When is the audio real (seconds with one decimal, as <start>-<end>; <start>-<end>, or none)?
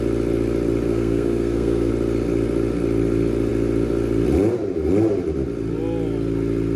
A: 0.0-0.9; 1.9-6.8